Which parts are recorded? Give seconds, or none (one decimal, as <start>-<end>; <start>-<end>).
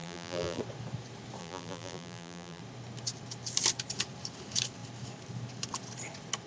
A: 0.6-1.4; 2.6-6.5